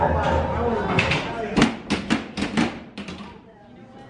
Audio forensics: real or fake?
real